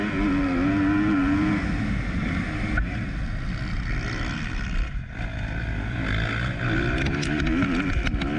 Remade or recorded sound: recorded